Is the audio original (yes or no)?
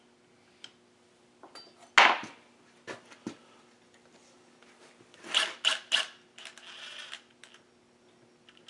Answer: yes